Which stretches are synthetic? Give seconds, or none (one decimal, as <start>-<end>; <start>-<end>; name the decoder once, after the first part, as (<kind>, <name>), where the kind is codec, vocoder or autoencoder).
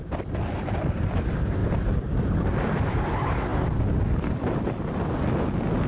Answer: none